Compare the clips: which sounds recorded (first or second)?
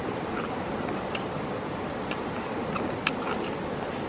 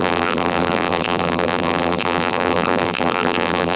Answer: first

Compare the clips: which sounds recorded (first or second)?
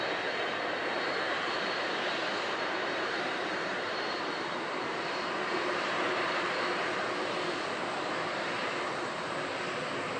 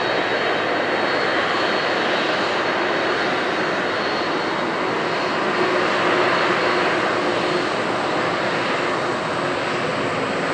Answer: second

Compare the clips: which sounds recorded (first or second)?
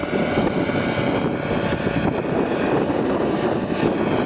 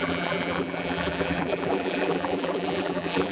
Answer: first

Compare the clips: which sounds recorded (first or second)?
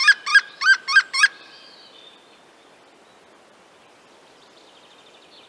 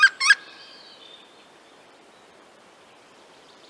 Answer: first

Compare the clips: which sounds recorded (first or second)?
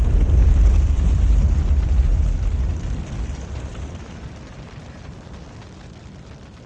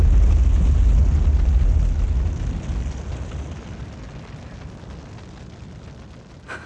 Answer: second